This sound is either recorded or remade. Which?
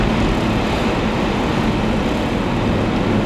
recorded